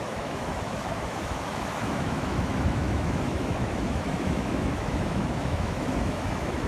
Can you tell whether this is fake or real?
fake